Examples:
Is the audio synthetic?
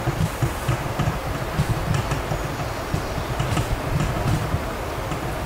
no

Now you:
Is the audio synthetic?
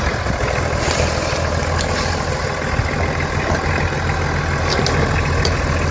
no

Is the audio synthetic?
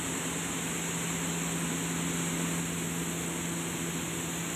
no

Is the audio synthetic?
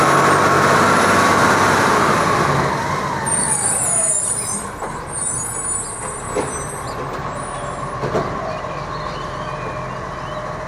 no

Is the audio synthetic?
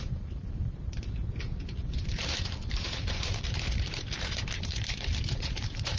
yes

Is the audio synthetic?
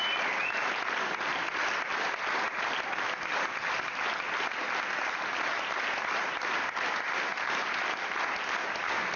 no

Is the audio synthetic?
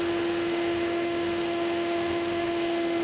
yes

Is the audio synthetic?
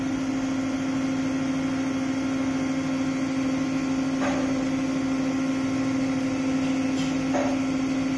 no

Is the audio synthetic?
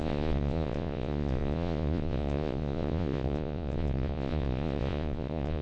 yes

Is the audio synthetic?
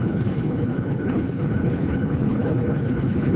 yes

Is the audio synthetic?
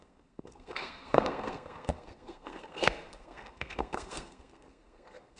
yes